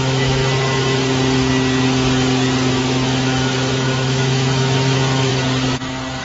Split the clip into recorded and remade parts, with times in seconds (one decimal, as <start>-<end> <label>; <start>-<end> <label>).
0.0-0.4 remade; 0.4-2.7 recorded; 2.7-5.3 remade; 5.3-6.2 recorded